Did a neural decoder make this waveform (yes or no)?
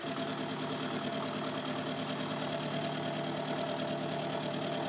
no